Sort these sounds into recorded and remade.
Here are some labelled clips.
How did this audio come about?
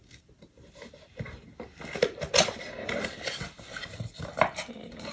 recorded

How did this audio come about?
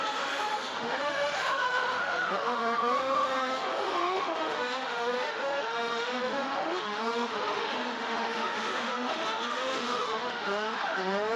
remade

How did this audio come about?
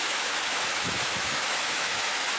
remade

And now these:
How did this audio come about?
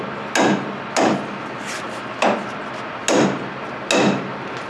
recorded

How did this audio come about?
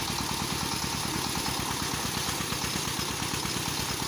recorded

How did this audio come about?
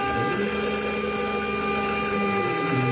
recorded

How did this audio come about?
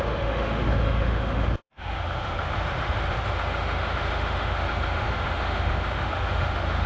remade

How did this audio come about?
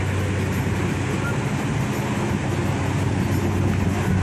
recorded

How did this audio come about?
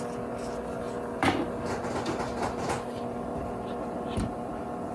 recorded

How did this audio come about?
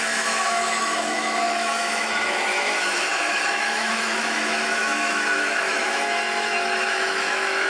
remade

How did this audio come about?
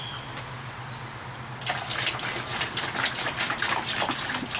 recorded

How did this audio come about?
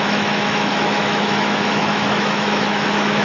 remade